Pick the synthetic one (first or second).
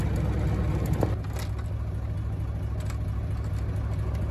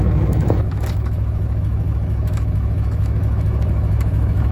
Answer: second